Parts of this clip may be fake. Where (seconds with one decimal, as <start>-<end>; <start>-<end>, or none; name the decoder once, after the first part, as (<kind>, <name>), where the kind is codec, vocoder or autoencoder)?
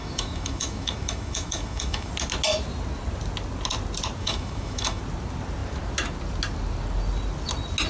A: 0.0-2.1 (autoencoder, DAC-VAE); 4.2-5.0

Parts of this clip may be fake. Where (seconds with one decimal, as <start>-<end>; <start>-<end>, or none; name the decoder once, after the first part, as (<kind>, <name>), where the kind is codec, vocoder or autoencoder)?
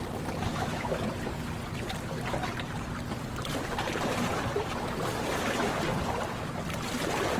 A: 0.5-1.0 (autoencoder, DAC-VAE)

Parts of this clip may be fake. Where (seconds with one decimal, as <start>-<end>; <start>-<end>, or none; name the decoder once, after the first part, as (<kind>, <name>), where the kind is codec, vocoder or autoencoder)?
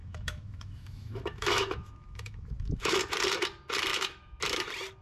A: 0.0-3.0 (autoencoder, DAC-VAE); 3.9-4.4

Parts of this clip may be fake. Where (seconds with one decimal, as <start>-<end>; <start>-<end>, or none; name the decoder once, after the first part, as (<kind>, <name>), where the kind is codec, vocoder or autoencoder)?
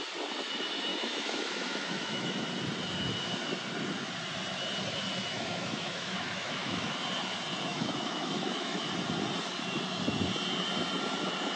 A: 0.9-2.3 (autoencoder, DAC-VAE); 5.3-6.9; 7.7-8.9